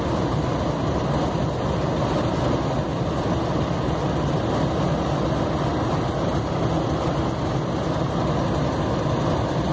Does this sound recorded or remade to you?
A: recorded